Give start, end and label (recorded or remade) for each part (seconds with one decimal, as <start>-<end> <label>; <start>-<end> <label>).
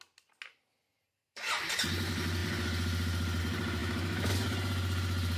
0.0-3.8 recorded; 3.8-4.3 remade; 4.3-5.4 recorded